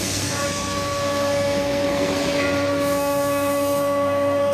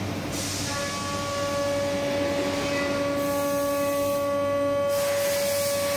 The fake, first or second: first